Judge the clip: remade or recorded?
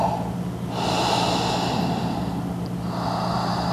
recorded